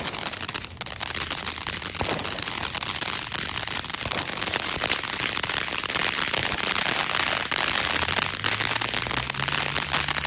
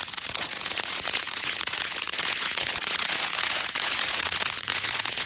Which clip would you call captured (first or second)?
first